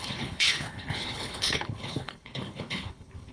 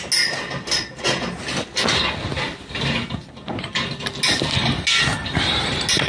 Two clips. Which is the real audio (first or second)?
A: second